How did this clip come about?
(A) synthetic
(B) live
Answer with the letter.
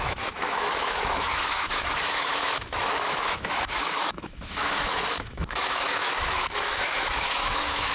A